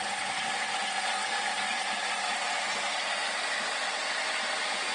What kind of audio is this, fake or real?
real